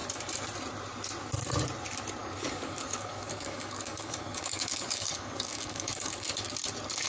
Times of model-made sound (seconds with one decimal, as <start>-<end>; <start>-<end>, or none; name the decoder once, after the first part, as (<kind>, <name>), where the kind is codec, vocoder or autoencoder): 2.2-6.5 (codec, DAC)